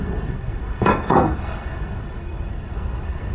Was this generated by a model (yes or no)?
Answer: yes